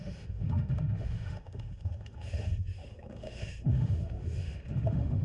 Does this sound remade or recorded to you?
remade